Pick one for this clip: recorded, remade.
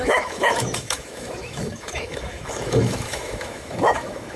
remade